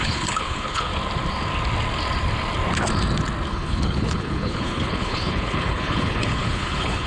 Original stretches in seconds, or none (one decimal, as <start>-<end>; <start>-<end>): 0.9-3.5